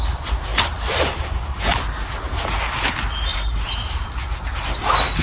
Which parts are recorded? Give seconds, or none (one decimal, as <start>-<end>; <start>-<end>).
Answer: 0.0-0.5; 1.7-3.3; 4.2-5.2